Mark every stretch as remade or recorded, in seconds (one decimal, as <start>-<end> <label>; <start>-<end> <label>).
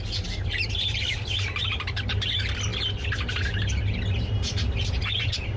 0.0-2.7 remade; 2.7-4.2 recorded; 4.2-5.6 remade